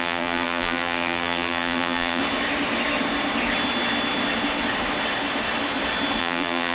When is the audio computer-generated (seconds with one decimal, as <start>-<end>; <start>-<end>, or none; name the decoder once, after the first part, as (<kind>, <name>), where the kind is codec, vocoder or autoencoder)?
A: 0.0-2.2 (vocoder, BigVGAN v2); 6.2-6.7